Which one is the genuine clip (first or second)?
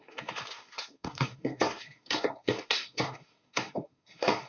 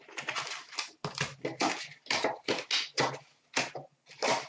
second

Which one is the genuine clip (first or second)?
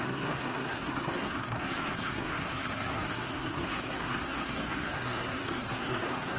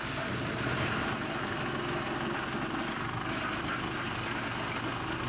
second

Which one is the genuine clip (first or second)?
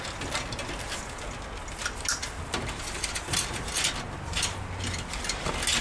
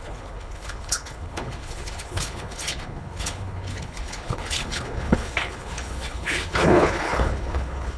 first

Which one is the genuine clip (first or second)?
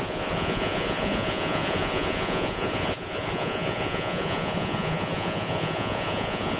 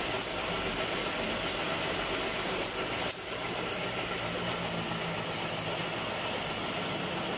second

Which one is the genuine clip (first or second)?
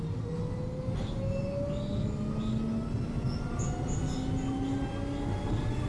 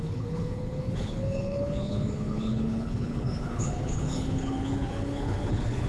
first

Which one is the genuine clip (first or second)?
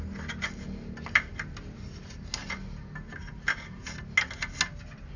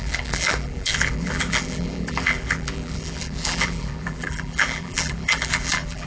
first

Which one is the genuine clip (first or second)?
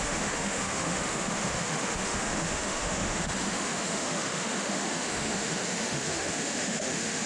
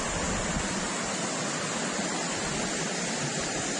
second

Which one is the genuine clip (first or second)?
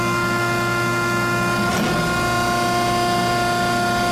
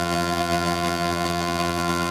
first